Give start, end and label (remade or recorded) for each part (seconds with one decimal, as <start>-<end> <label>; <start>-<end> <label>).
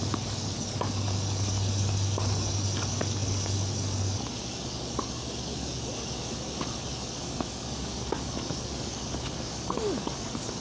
0.0-10.6 remade